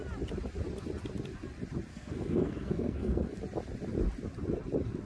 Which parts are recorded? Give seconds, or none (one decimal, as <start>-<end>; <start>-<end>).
0.0-1.9; 3.4-5.1